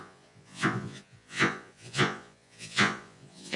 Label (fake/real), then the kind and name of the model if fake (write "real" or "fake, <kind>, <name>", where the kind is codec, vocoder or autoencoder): fake, vocoder, Vocos